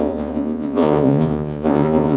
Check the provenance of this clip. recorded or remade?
remade